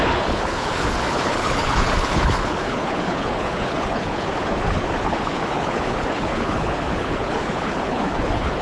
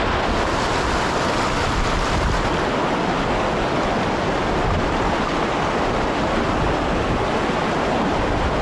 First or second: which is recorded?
second